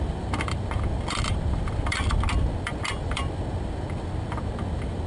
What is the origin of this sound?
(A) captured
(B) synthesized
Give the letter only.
B